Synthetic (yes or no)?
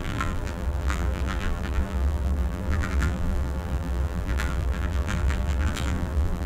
yes